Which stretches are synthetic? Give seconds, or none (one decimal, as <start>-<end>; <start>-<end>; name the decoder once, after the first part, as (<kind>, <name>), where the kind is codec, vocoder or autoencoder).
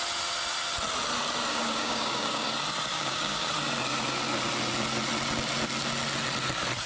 1.5-2.5 (codec, DAC); 2.9-3.5